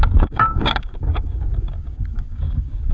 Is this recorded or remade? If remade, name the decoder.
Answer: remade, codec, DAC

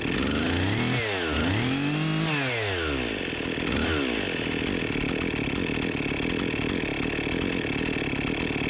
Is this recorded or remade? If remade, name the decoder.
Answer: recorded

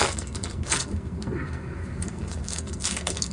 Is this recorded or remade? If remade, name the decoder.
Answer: remade, codec, SNAC